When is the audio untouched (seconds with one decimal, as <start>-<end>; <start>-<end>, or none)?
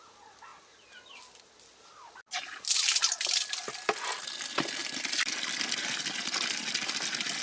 0.0-7.4